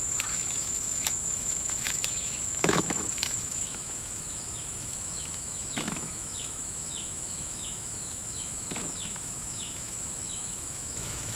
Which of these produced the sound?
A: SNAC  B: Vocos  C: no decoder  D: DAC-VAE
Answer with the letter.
D